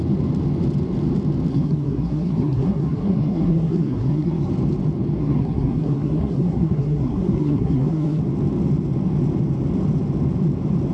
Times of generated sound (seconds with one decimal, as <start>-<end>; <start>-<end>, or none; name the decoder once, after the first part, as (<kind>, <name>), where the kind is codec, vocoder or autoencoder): 1.5-4.5 (codec, SNAC); 5.2-8.2